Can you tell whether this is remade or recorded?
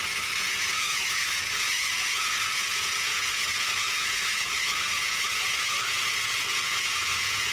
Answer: remade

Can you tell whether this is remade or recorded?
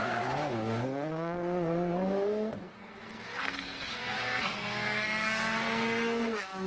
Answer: remade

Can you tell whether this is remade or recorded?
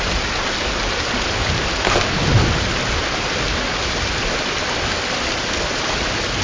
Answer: recorded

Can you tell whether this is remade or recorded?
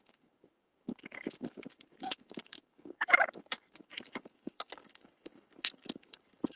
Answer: remade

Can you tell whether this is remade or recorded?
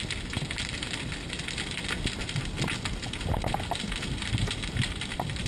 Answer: recorded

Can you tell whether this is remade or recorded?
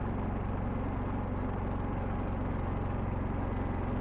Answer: recorded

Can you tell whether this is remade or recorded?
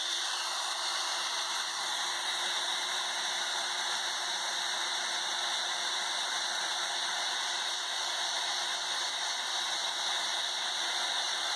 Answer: remade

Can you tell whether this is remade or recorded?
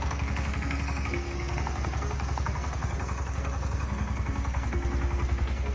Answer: remade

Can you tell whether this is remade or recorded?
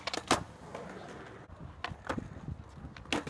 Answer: recorded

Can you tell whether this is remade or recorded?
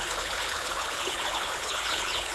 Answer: remade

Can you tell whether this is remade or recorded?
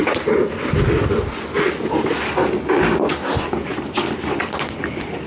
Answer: recorded